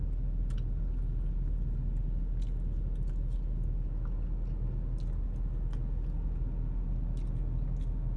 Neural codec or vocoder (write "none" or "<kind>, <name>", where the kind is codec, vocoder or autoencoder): none